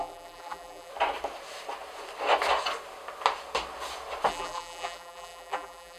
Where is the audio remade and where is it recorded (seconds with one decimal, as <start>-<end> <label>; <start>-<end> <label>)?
0.0-0.9 remade; 0.9-4.3 recorded; 4.3-6.0 remade